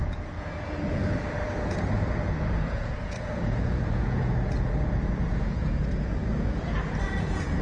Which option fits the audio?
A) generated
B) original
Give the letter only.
A